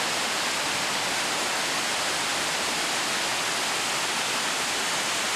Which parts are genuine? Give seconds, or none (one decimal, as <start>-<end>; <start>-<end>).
0.0-5.4